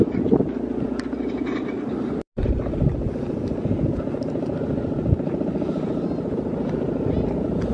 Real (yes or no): yes